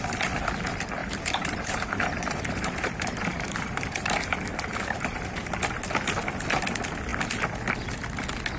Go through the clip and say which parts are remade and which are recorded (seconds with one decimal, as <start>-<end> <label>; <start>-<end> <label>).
0.0-1.0 recorded; 1.0-5.6 remade; 5.6-8.6 recorded